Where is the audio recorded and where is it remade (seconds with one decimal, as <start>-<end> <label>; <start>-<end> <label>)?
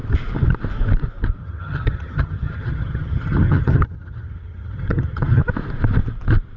0.0-1.4 recorded; 1.4-5.4 remade; 5.4-6.6 recorded